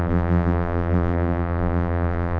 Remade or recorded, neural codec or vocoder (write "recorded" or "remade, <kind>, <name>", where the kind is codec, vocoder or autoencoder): remade, vocoder, BigVGAN v2